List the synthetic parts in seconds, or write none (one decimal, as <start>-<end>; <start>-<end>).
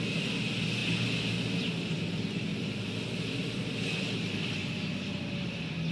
none